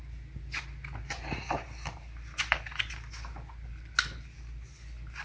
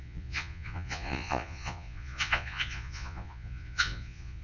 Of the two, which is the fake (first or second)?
second